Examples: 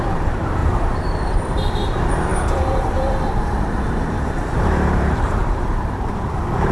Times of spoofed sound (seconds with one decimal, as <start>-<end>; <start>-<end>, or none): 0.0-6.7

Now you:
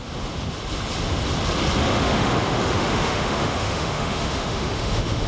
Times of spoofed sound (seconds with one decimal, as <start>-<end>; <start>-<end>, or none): 1.8-5.3

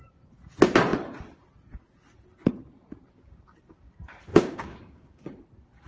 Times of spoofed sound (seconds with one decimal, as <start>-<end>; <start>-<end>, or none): 4.3-5.2

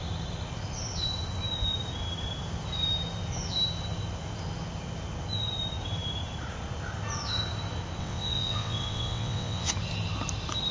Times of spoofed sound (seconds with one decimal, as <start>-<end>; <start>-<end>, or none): 8.0-9.7